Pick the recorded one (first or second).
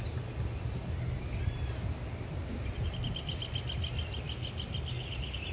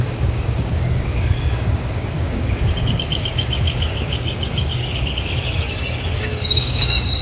first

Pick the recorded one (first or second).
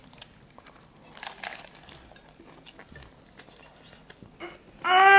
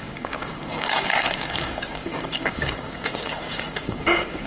first